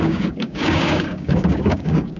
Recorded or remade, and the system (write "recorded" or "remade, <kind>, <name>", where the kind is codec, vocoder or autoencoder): remade, codec, DAC